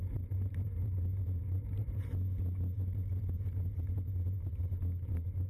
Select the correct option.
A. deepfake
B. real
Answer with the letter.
A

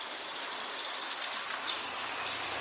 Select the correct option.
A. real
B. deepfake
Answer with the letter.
B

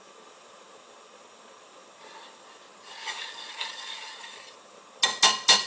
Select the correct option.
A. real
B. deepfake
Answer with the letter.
A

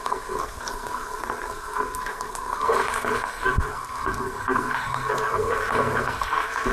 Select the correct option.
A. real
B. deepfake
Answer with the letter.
B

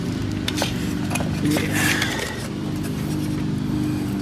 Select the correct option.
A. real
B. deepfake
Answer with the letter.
A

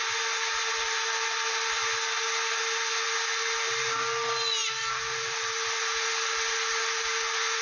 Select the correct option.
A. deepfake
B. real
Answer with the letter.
B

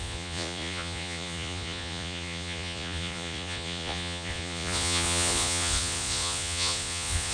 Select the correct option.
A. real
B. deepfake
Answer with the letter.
B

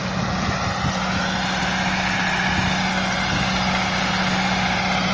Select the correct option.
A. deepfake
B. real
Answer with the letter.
B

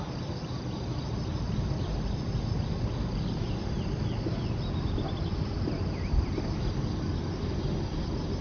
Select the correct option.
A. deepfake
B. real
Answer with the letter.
B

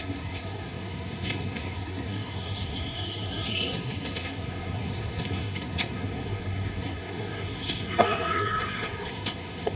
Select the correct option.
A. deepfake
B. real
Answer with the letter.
A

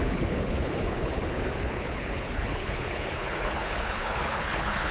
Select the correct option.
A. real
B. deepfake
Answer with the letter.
B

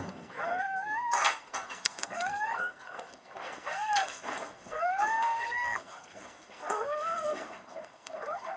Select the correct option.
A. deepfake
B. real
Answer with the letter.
A